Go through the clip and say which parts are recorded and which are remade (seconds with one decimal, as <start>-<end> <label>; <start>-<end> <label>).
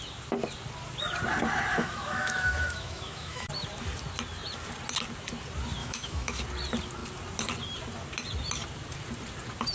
0.0-1.7 recorded; 1.7-3.5 remade; 3.5-5.8 recorded; 5.8-6.4 remade; 6.4-9.7 recorded